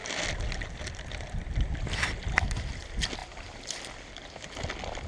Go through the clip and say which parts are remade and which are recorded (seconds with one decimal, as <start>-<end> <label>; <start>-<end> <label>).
0.0-5.1 recorded